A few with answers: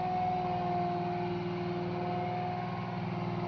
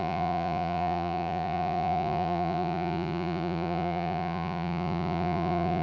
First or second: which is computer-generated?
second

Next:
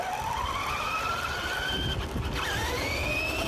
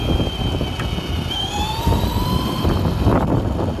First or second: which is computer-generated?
first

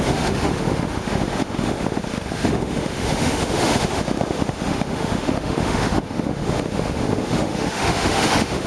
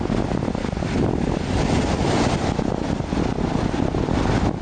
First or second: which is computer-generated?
first